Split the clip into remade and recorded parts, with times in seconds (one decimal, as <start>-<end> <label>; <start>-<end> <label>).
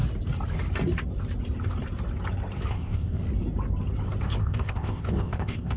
0.0-2.7 recorded; 2.7-3.2 remade; 3.2-4.4 recorded; 4.4-5.8 remade